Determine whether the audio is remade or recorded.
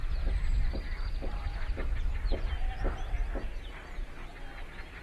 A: recorded